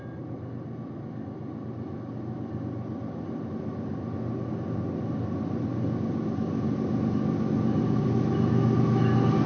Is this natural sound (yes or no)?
yes